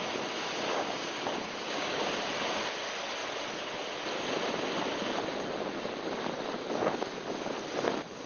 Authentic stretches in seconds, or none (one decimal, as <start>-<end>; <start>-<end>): 0.0-0.7; 2.2-8.3